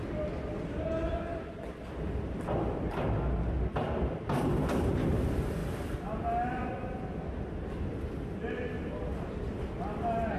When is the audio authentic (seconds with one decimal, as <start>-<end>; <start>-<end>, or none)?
0.0-10.4